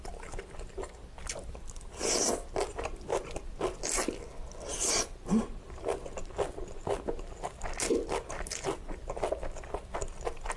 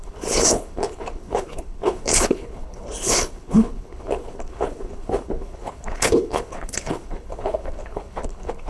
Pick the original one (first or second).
first